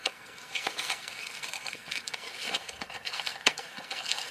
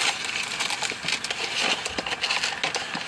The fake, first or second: first